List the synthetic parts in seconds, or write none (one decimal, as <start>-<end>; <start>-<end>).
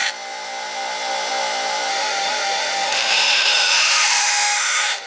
1.9-5.1